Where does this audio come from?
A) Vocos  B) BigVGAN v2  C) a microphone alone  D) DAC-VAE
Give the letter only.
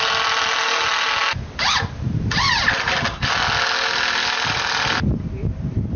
C